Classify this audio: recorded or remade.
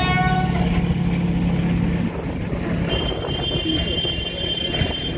recorded